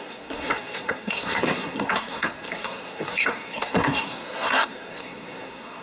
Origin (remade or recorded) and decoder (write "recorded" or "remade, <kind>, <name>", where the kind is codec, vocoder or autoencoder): remade, codec, SNAC